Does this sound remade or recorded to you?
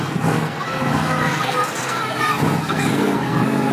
remade